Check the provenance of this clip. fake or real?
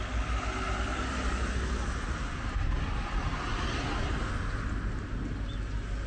real